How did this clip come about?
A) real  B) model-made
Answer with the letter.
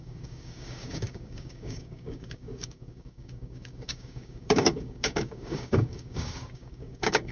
B